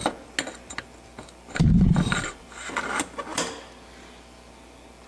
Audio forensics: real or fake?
real